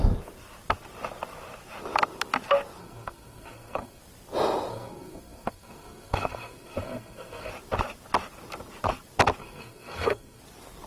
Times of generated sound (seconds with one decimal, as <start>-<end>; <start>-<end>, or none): 2.8-4.0; 4.7-7.5; 9.4-10.4